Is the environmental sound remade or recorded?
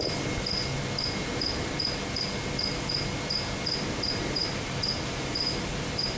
remade